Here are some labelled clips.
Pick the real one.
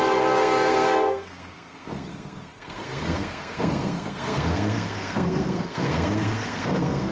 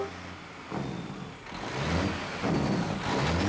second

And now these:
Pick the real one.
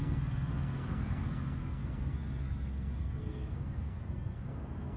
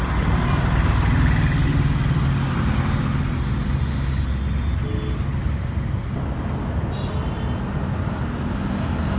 second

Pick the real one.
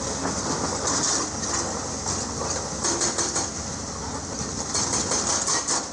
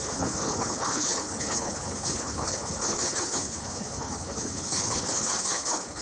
first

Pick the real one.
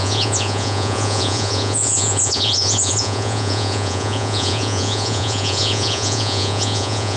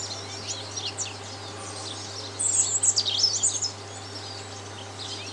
second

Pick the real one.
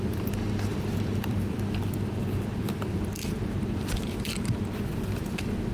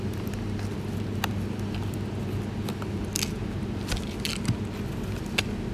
second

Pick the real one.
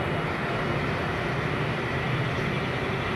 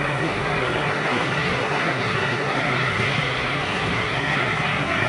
first